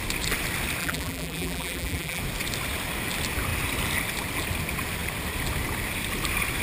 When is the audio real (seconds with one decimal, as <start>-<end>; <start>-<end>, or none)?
0.0-0.8; 2.2-6.6